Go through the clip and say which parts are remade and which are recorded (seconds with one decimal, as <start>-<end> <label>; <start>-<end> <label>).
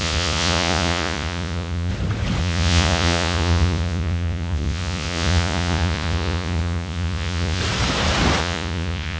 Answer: 0.0-1.9 remade; 1.9-2.4 recorded; 2.4-7.6 remade; 7.6-8.4 recorded; 8.4-9.2 remade